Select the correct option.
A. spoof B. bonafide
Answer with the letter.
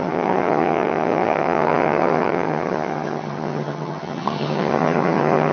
A